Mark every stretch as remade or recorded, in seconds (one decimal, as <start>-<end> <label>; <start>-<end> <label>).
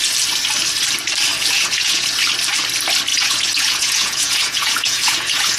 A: 0.0-1.3 recorded; 1.3-2.1 remade; 2.1-3.1 recorded; 3.1-5.6 remade